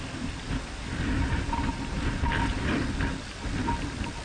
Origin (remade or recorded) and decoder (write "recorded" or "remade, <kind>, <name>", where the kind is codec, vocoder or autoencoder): recorded